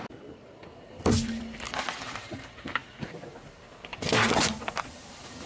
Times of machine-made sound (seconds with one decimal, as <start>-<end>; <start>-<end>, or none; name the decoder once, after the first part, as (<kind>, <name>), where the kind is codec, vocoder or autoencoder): none